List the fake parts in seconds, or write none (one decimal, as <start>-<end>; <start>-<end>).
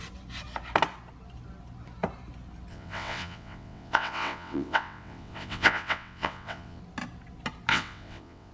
2.7-6.8; 7.7-8.5